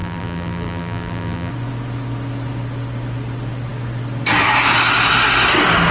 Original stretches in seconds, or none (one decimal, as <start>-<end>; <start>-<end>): 1.5-5.9